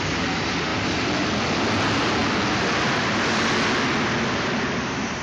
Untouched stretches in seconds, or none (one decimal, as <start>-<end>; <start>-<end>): 0.0-0.7; 1.7-2.2; 3.0-5.2